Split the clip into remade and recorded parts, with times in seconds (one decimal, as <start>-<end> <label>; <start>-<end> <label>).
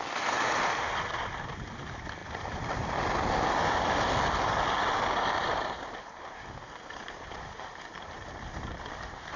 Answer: 0.0-5.4 recorded; 5.4-6.1 remade; 6.1-9.4 recorded